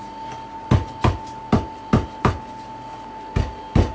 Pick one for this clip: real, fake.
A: real